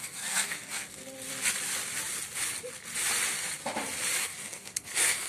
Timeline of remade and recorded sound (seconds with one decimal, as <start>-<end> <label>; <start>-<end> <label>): 0.0-1.0 remade; 1.0-4.2 recorded; 4.2-5.3 remade